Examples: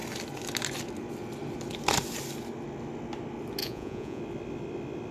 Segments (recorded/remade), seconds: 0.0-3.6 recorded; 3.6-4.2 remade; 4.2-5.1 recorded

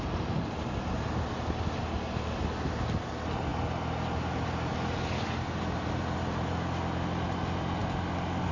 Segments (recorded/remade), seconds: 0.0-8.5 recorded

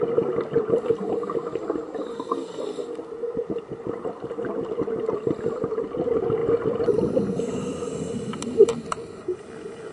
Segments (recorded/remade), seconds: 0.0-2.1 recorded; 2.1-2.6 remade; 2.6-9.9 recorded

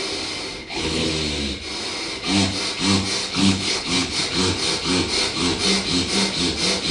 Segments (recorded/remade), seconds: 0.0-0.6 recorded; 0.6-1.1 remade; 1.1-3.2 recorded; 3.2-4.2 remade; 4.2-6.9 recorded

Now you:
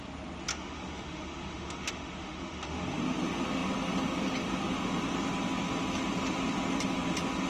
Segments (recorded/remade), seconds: 0.0-0.5 recorded; 0.5-2.8 remade; 2.8-7.5 recorded

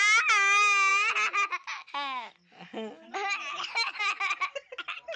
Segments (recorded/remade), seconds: 0.0-5.2 recorded